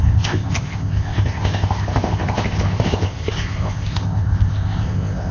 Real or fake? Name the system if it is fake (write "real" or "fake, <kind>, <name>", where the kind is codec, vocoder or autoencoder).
fake, codec, ZipCodec